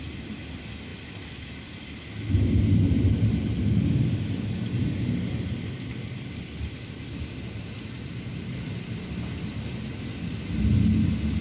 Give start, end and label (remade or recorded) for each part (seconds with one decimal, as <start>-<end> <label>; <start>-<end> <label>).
0.0-11.4 recorded